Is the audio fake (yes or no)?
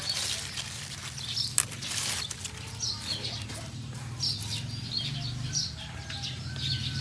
no